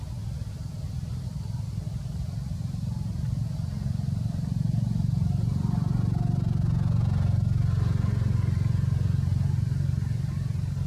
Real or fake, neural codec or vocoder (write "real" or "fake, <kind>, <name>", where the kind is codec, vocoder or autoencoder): real